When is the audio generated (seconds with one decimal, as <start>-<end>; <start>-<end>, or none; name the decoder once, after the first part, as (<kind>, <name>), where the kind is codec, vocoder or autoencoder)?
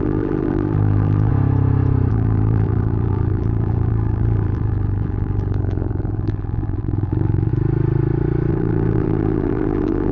0.0-1.3 (vocoder, BigVGAN v2); 2.1-7.5; 8.5-10.1